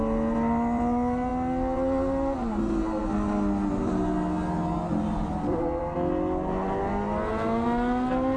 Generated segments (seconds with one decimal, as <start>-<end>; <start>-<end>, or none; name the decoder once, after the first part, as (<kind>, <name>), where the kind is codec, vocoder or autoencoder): none